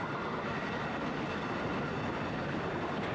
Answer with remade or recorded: recorded